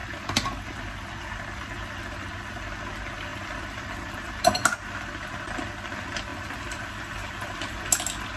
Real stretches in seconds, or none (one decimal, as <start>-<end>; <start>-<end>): 0.0-3.3; 4.3-6.3; 7.8-8.4